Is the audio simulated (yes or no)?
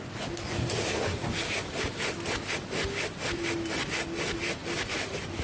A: no